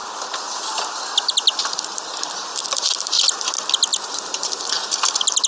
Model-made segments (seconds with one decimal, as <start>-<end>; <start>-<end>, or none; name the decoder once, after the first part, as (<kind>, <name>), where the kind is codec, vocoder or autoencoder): 3.9-4.7 (vocoder, BigVGAN v2)